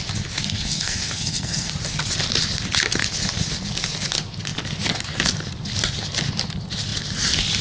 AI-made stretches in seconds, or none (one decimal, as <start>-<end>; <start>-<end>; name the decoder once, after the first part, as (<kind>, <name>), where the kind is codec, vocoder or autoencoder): 0.4-1.7 (codec, SNAC)